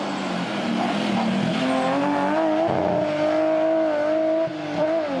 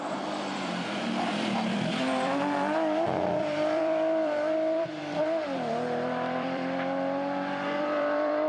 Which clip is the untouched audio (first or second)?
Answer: first